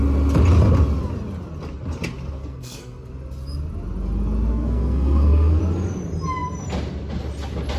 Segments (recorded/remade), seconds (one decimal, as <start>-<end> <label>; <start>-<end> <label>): 0.0-2.4 recorded; 2.4-3.1 remade; 3.1-4.5 recorded; 4.5-5.6 remade; 5.6-7.8 recorded